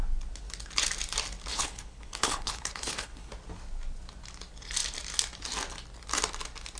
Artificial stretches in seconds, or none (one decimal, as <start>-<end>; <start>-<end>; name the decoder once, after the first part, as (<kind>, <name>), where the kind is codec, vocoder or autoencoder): 1.5-3.3 (codec, HILCodec)